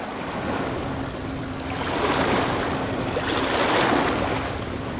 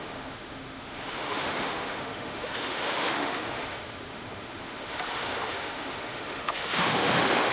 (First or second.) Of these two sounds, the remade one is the second